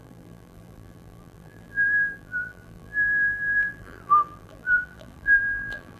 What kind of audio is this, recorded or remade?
remade